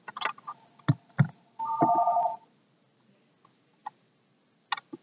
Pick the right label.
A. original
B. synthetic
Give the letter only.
A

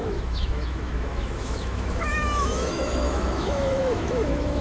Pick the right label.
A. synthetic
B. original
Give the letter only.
A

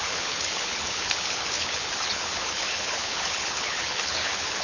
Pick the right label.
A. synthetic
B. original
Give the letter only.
A